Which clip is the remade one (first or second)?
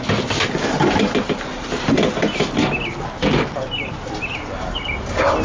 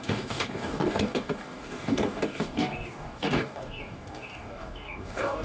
second